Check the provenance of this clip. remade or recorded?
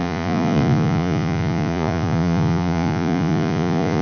remade